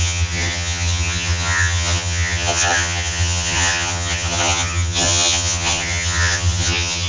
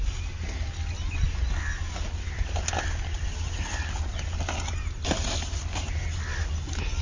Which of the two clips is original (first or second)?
second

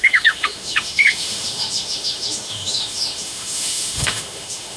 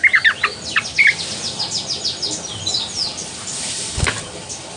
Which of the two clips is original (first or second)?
second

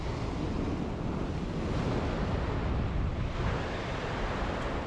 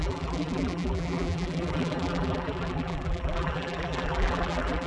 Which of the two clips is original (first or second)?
first